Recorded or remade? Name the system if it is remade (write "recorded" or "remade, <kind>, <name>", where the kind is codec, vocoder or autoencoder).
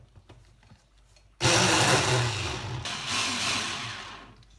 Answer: recorded